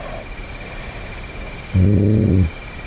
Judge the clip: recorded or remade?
recorded